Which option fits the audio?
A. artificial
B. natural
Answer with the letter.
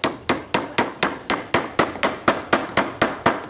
B